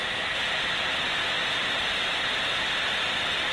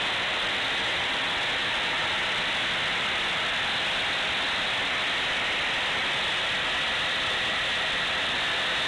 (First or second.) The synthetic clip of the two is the first